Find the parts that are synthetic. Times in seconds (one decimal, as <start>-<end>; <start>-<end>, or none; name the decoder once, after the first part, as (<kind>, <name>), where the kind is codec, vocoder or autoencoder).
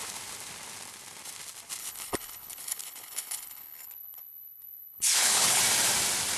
1.8-5.6 (codec, HILCodec)